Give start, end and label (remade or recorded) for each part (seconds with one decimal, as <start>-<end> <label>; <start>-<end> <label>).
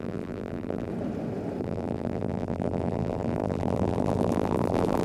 0.0-0.9 remade; 0.9-1.6 recorded; 1.6-5.0 remade